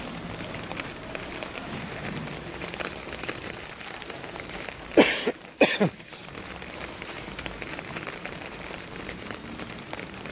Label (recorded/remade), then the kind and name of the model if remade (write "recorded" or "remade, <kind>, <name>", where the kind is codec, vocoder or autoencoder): remade, vocoder, BigVGAN v2